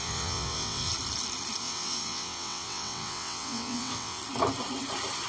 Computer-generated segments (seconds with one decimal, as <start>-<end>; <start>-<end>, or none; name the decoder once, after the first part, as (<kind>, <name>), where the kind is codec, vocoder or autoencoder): 0.0-0.9 (vocoder, WaveNeXt); 1.6-4.2